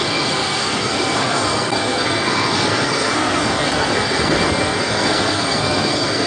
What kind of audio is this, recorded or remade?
remade